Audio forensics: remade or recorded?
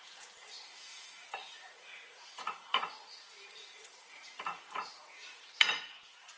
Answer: remade